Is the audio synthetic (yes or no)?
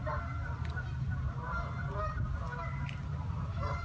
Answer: no